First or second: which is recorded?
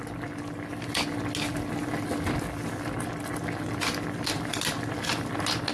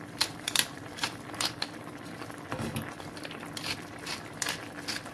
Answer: first